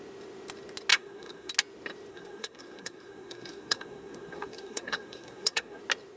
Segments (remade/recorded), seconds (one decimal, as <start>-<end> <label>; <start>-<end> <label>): 0.0-0.9 recorded; 0.9-1.5 remade; 1.5-2.1 recorded; 2.1-5.8 remade; 5.8-6.2 recorded